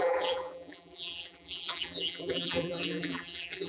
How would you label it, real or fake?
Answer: fake